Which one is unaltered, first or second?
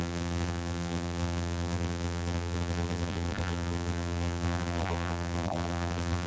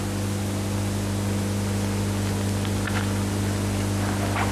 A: second